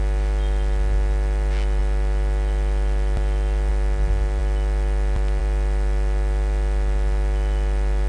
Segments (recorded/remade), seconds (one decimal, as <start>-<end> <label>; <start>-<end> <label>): 0.0-8.1 recorded